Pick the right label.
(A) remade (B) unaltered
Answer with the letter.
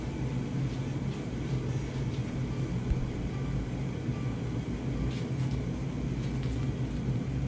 B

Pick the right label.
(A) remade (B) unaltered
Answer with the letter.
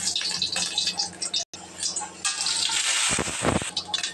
B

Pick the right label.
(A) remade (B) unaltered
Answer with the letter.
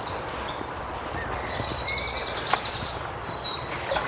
B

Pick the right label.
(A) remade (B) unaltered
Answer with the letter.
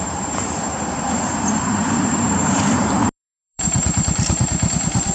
A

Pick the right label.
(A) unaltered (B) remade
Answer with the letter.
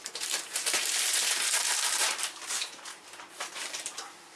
B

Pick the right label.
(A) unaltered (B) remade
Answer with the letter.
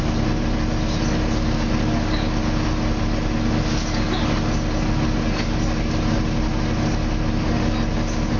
A